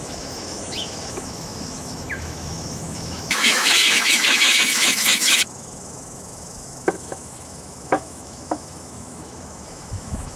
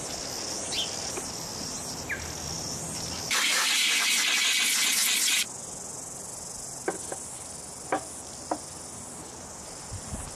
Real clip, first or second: second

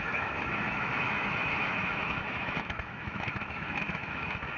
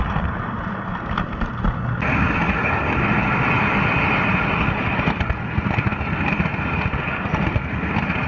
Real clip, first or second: second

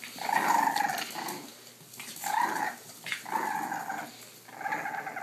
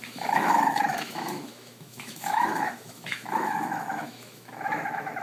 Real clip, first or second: first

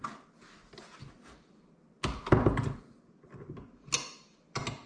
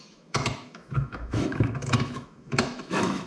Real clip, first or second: first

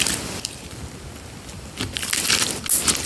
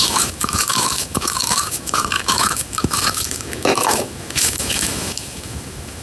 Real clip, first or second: first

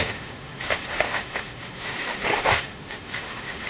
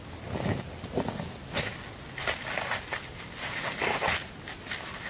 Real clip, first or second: second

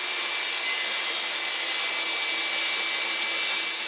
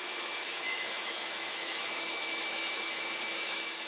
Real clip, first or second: first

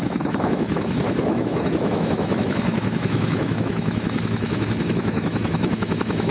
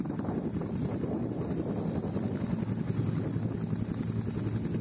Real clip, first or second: second